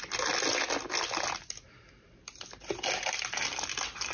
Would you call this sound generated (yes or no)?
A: no